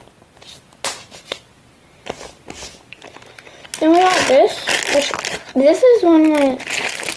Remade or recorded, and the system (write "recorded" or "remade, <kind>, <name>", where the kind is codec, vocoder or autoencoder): recorded